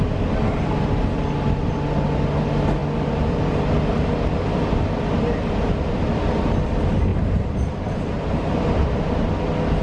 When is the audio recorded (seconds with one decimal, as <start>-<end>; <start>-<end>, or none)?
0.0-7.1; 9.2-9.8